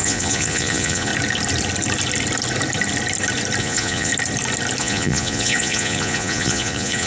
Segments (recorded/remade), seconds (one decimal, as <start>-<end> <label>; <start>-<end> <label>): 0.0-1.1 remade; 1.1-3.6 recorded; 3.6-4.1 remade; 4.1-4.8 recorded; 4.8-7.1 remade